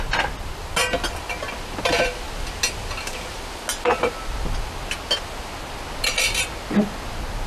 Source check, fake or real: real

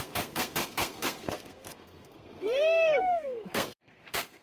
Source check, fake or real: fake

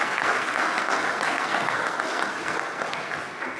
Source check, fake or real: fake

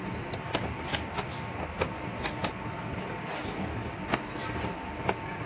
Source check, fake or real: real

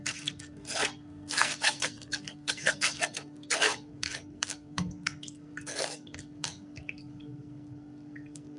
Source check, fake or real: fake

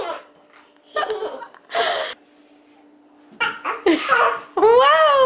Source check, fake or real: real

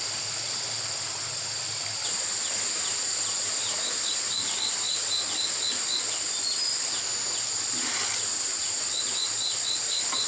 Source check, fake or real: real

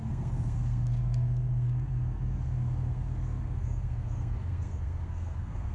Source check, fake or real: fake